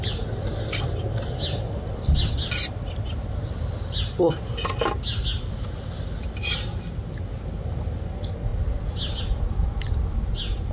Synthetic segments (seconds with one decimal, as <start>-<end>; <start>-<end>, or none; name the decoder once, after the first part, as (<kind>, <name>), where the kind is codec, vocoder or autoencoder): none